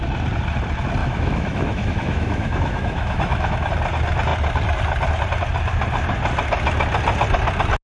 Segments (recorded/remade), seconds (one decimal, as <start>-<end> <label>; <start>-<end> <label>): 0.0-1.0 recorded; 1.0-3.7 remade; 3.7-7.8 recorded